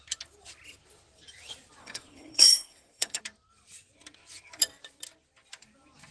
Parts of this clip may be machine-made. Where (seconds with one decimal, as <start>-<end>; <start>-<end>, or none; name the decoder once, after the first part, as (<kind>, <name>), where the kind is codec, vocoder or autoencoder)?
1.8-3.2 (codec, SNAC)